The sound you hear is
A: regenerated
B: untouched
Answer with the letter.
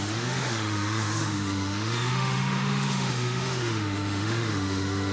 A